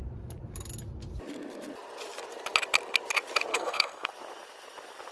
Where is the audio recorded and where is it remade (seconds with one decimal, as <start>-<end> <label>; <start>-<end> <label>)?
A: 0.0-3.5 recorded; 3.5-4.1 remade; 4.1-5.1 recorded